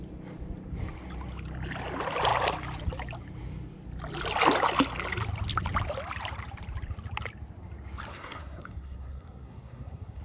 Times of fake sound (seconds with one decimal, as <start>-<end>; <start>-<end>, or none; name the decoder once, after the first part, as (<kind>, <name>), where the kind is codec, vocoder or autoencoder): 8.1-10.2 (codec, SNAC)